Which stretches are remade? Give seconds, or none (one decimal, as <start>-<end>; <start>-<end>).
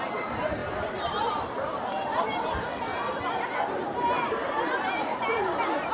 0.0-2.9; 4.1-5.9